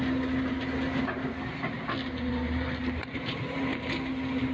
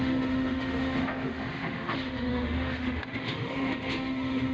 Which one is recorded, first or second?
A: first